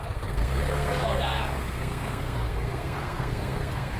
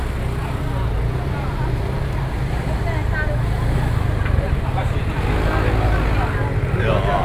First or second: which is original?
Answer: second